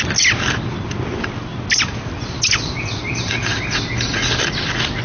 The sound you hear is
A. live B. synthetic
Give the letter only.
A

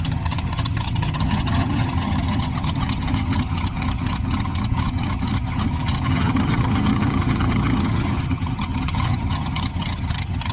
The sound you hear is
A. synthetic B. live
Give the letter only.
A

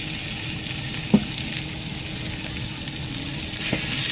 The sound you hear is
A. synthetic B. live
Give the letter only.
B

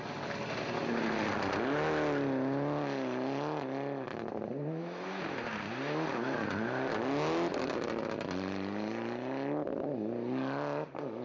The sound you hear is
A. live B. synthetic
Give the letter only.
A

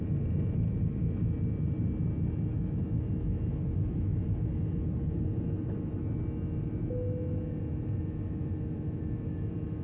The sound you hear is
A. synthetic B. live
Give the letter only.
B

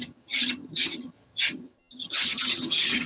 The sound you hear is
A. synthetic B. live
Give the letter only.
A